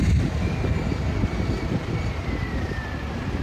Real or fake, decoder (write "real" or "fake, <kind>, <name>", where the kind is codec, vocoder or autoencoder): fake, vocoder, BigVGAN v2